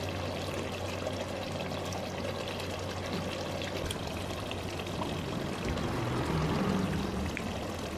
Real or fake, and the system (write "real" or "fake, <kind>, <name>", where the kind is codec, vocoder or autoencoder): real